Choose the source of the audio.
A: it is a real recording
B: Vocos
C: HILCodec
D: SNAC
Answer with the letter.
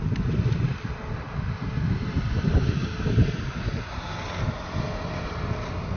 A